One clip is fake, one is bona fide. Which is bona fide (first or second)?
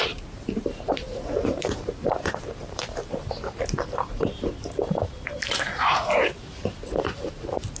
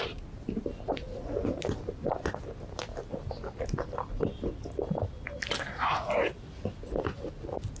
second